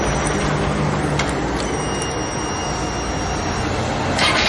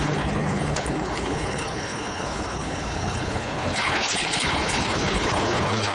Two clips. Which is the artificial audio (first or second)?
second